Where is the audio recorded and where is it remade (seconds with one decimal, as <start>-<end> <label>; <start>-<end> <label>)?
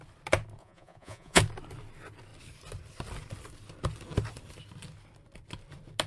0.0-0.6 recorded; 0.6-1.4 remade; 1.4-6.1 recorded